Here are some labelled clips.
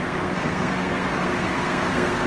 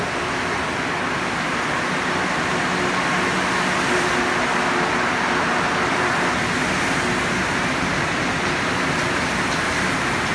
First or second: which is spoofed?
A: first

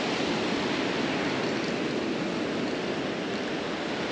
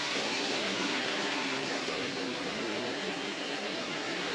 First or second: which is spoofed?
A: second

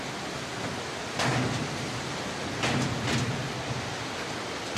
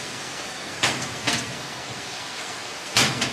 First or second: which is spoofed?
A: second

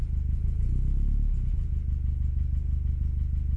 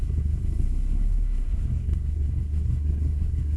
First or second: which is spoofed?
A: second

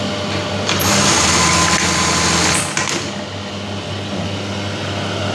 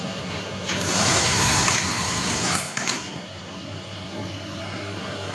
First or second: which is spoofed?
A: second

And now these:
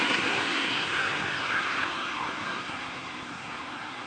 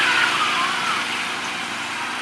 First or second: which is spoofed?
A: first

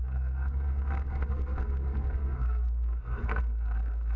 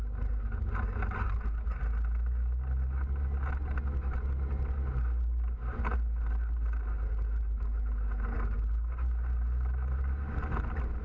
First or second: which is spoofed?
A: first